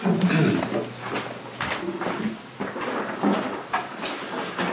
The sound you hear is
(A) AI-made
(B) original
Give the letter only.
B